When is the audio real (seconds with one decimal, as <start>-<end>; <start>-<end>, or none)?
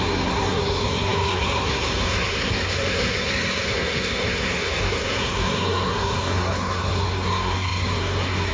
none